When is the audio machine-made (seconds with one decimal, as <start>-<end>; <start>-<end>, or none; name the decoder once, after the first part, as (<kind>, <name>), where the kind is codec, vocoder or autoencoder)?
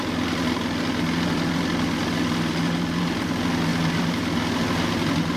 none